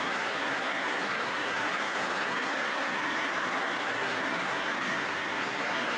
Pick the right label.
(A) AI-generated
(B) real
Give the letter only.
A